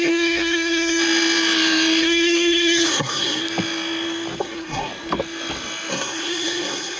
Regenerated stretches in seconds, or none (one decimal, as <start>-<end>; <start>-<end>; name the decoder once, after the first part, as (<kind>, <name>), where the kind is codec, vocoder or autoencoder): 0.0-1.0 (codec, SNAC); 2.0-3.4; 4.4-4.9; 5.9-7.0